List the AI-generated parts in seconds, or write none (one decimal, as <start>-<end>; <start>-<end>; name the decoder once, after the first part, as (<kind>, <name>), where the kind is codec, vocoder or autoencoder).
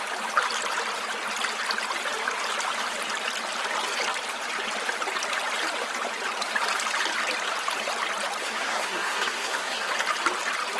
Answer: 8.4-9.9 (codec, SNAC)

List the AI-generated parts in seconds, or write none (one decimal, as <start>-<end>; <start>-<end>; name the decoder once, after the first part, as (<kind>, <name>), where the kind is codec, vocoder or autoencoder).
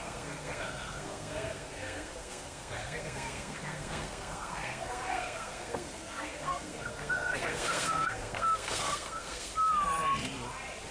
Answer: 0.0-9.5 (codec, SNAC)